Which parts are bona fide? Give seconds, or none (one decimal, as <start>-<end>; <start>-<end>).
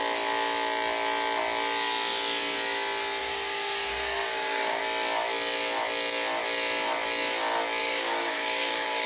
0.0-3.2; 4.8-7.8